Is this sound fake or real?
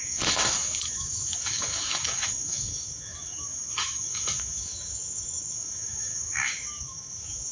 fake